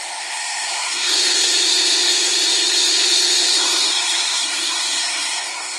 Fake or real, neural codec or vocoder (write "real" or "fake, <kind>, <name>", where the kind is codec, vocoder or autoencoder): fake, codec, SNAC